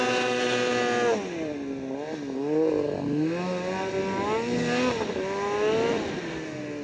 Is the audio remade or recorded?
recorded